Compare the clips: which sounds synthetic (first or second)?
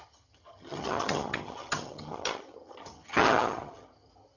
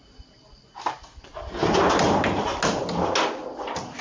first